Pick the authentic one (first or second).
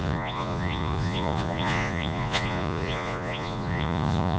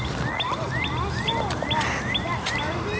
second